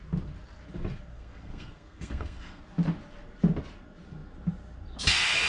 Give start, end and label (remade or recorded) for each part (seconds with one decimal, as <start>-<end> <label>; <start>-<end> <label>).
0.0-1.1 recorded; 1.1-2.6 remade; 2.6-5.5 recorded